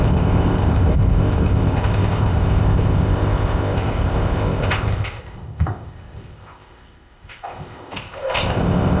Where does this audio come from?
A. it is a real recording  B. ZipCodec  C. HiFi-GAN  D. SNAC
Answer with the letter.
B